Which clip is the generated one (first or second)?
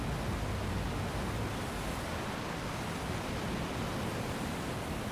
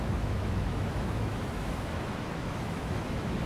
second